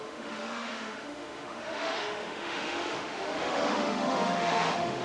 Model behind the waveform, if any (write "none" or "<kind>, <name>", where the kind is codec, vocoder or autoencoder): autoencoder, DAC-VAE